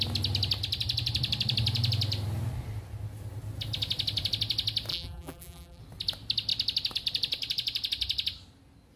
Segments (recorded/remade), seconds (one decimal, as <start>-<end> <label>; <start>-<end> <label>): 0.0-4.9 recorded; 4.9-5.8 remade; 5.8-9.0 recorded